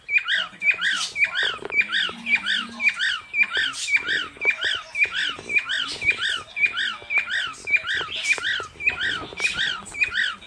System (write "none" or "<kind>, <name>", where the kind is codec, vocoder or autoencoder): none